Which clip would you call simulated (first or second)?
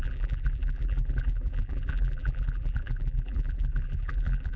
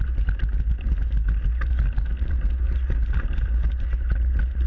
first